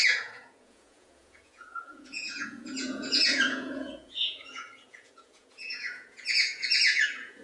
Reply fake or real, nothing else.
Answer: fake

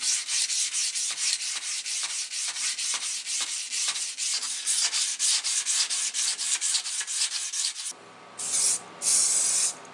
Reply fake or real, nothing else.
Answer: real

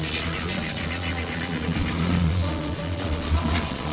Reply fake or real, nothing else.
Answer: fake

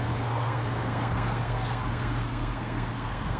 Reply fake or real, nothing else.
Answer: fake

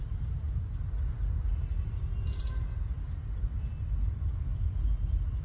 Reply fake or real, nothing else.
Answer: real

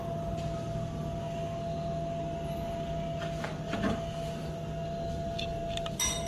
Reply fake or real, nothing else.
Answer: real